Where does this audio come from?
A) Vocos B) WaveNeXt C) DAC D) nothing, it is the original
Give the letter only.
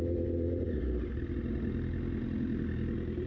D